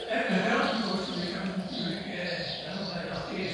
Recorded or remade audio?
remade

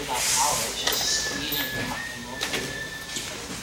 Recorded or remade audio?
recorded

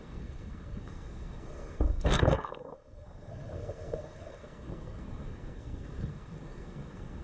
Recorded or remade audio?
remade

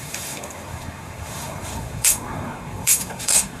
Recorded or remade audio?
remade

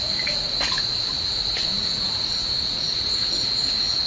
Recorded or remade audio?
remade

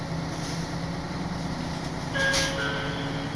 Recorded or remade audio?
recorded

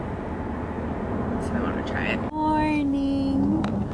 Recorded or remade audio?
recorded